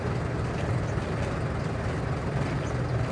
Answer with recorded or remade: recorded